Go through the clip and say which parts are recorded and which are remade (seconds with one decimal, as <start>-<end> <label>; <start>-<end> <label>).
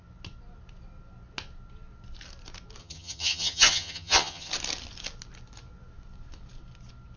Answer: 0.0-2.8 recorded; 2.8-4.5 remade; 4.5-7.2 recorded